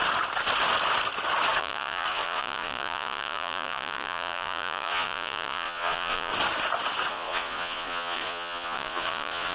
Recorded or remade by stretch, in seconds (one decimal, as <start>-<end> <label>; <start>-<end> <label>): 0.0-1.6 recorded; 1.6-6.3 remade; 6.3-7.1 recorded; 7.1-9.5 remade